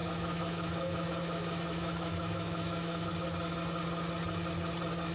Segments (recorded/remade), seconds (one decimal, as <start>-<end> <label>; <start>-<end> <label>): 0.0-3.1 remade; 3.1-5.1 recorded